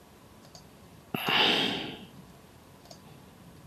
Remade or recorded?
remade